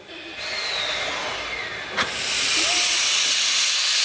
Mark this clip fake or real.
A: real